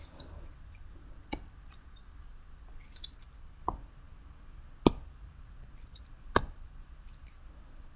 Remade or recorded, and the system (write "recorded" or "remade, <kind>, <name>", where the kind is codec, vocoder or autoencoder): recorded